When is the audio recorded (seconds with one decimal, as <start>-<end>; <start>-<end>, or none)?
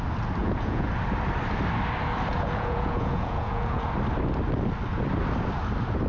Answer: 0.0-0.4; 0.9-2.3; 3.9-6.1